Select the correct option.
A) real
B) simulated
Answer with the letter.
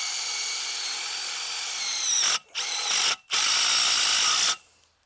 A